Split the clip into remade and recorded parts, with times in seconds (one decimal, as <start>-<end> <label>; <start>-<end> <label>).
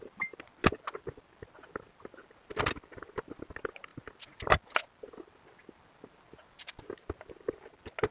0.0-8.1 recorded